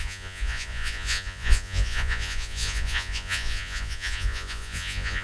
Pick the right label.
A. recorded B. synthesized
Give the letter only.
B